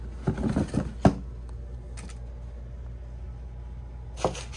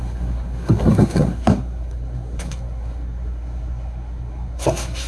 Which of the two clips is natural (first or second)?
first